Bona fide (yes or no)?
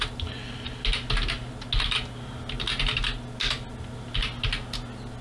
yes